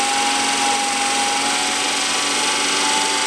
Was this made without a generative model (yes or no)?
yes